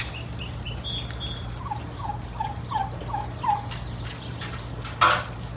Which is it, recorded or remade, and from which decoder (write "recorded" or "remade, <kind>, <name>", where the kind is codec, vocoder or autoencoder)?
recorded